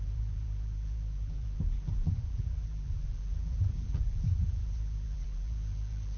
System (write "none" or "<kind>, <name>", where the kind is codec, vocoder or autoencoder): vocoder, BigVGAN v2